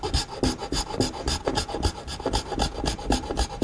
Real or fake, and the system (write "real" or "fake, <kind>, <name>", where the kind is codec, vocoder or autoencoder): real